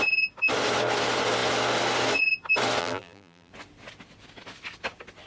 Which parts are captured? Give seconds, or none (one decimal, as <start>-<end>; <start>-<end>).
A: 0.0-2.8; 3.5-5.3